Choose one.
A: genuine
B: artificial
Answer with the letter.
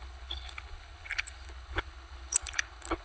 B